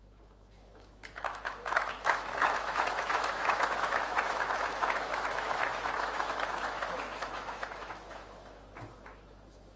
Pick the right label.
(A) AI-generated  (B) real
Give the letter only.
A